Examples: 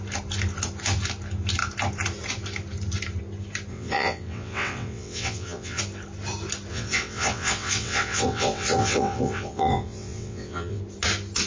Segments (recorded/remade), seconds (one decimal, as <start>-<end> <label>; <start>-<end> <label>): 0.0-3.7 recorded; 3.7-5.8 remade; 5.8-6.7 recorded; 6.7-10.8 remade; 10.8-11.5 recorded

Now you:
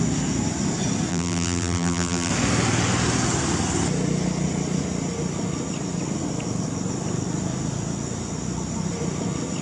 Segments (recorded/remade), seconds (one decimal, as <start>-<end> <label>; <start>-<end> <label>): 0.0-1.1 recorded; 1.1-2.3 remade; 2.3-9.6 recorded

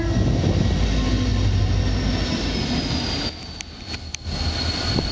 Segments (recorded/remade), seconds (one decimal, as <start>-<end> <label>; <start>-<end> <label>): 0.0-5.1 recorded